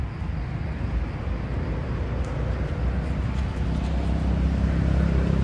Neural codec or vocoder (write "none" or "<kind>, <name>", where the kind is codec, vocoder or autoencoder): none